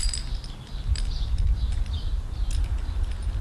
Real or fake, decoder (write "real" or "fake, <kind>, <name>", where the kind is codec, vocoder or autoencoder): fake, vocoder, BigVGAN v2